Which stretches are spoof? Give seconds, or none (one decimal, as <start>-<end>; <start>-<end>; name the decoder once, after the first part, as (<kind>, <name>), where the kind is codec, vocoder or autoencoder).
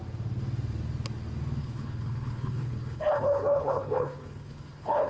1.6-5.1 (codec, HILCodec)